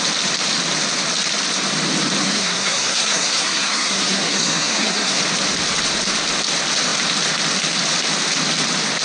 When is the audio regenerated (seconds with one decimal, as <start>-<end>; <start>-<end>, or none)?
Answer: 2.2-5.2